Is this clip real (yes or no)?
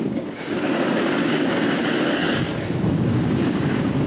no